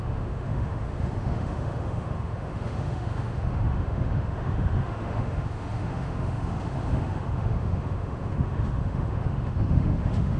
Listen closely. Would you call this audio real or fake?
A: fake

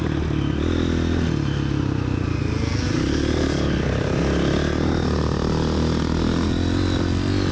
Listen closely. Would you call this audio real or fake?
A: real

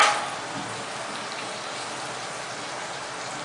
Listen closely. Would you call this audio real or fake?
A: real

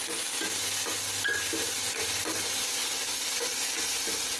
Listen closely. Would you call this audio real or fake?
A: real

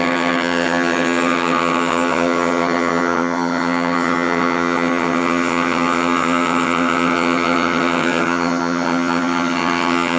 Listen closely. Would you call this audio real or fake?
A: fake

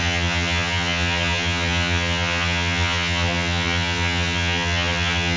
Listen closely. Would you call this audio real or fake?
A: fake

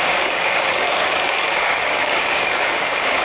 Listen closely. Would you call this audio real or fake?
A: fake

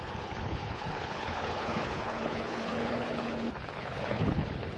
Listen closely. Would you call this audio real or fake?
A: fake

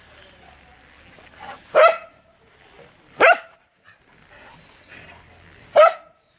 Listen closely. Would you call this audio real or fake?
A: real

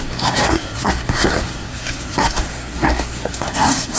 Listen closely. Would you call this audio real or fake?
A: fake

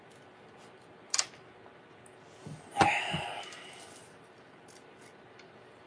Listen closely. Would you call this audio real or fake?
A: real